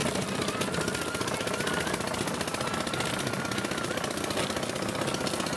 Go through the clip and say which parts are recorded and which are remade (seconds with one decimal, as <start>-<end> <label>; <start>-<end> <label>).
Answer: 0.0-3.4 remade; 3.4-5.6 recorded